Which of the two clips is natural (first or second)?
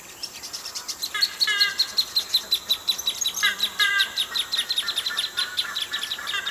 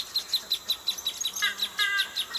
second